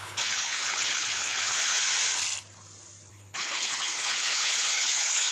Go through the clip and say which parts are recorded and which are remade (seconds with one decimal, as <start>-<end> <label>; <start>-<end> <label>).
0.0-1.8 remade; 1.8-3.1 recorded; 3.1-5.3 remade